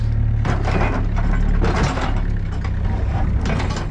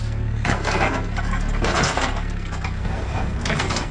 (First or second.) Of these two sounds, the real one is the first